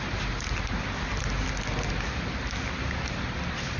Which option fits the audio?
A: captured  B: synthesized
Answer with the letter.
A